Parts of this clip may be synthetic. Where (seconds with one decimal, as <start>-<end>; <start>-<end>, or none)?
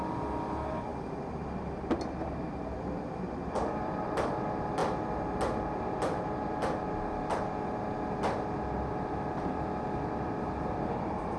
0.0-4.8; 8.9-11.4